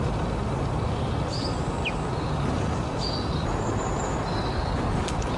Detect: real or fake real